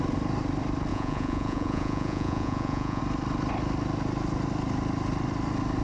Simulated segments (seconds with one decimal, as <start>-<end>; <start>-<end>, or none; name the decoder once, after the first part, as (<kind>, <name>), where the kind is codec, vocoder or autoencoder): 0.9-3.0 (vocoder, Vocos)

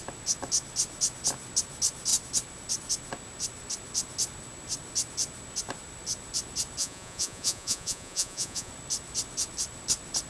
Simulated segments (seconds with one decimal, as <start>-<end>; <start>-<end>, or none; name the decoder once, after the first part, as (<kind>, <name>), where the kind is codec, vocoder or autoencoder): 6.8-8.7 (vocoder, Vocos)

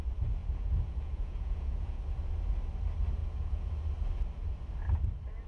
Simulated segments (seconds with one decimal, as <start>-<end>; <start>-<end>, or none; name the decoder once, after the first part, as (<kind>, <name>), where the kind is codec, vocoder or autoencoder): 0.4-2.0 (vocoder, Vocos); 3.2-3.7

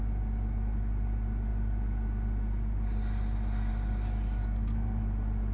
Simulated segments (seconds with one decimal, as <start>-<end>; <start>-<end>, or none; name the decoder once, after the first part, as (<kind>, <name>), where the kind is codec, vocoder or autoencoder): none